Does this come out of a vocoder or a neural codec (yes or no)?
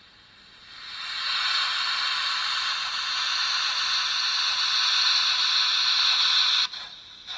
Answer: no